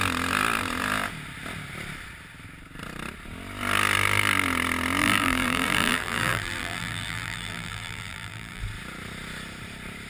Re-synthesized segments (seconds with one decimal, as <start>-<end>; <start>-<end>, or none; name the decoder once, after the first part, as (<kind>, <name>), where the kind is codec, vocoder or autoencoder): 5.0-8.6 (vocoder, BigVGAN v2)